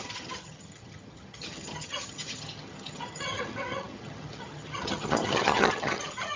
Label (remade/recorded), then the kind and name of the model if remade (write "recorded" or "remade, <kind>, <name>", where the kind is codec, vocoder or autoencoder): remade, vocoder, HiFi-GAN